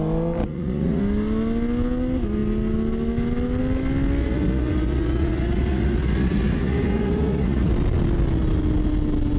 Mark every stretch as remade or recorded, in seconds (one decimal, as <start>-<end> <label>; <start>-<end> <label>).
0.0-0.4 recorded; 0.4-1.0 remade; 1.0-4.2 recorded; 4.2-7.7 remade; 7.7-9.4 recorded